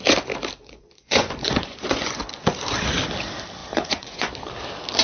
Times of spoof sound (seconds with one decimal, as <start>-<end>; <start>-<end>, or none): 0.6-2.2; 3.6-4.3